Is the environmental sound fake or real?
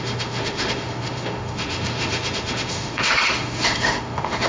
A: fake